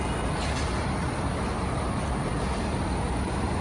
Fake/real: real